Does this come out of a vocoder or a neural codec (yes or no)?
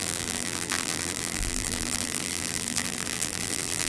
yes